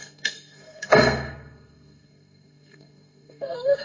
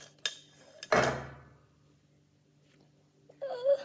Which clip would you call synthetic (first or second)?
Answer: first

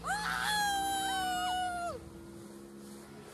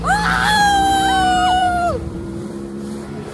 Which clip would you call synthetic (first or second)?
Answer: second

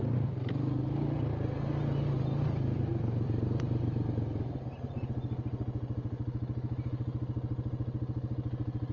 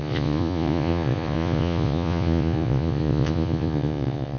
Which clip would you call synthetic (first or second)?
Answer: second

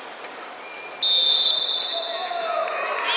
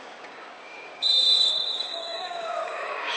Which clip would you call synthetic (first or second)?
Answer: second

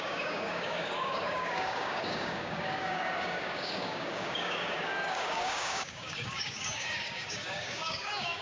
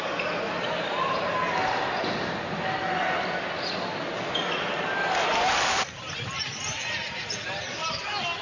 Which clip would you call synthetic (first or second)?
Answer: first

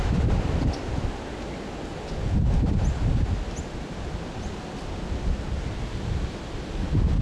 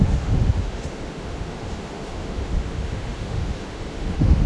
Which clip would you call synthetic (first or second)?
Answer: second